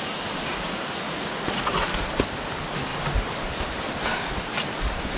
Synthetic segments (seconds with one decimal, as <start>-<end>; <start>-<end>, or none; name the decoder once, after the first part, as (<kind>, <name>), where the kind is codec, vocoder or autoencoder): 0.5-2.0 (vocoder, Vocos)